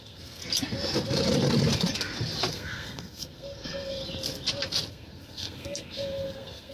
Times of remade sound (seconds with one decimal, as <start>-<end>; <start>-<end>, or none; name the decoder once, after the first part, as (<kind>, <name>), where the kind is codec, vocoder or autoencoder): 0.0-0.4 (codec, SNAC); 2.5-4.0; 4.9-6.7